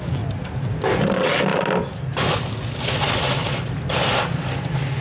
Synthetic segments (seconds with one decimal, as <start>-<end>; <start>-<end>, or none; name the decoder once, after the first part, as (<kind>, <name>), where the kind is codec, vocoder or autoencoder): none